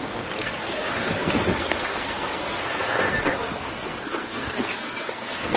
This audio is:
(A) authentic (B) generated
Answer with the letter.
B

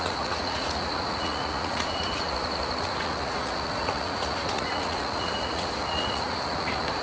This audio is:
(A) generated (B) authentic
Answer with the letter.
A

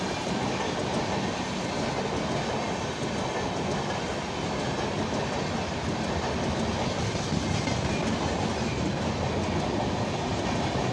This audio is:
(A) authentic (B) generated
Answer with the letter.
A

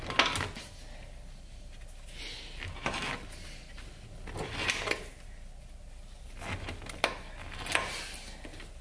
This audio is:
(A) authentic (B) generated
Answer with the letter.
A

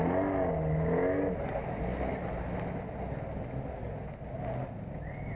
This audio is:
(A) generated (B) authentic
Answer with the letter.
B